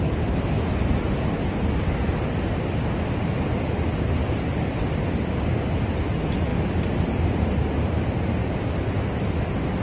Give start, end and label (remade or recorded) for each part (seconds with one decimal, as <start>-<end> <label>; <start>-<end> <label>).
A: 0.0-4.2 recorded; 4.2-5.2 remade; 5.2-6.5 recorded; 6.5-7.5 remade; 7.5-8.4 recorded; 8.4-9.0 remade; 9.0-9.8 recorded